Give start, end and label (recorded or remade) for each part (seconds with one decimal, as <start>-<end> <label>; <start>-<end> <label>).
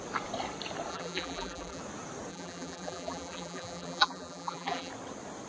0.0-0.9 recorded; 0.9-1.8 remade; 1.8-2.3 recorded; 2.3-4.9 remade; 4.9-5.5 recorded